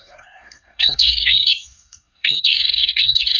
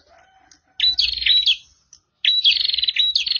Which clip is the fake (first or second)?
first